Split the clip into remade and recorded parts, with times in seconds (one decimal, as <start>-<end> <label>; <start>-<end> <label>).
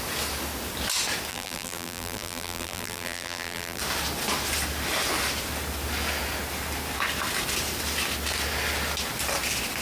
0.0-1.3 recorded; 1.3-3.8 remade; 3.8-9.8 recorded